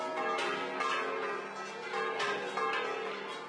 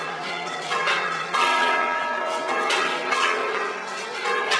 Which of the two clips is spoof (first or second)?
second